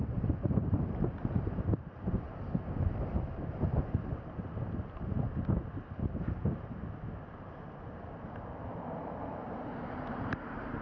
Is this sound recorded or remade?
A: remade